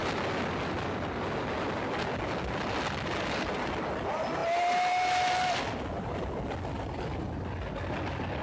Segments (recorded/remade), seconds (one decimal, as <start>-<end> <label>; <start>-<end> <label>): 0.0-8.4 recorded